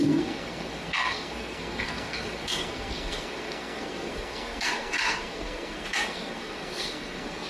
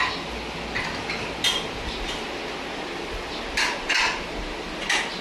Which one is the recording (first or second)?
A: second